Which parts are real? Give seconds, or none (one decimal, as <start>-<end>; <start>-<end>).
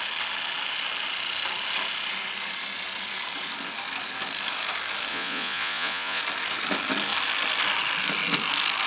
0.0-5.1; 6.2-8.9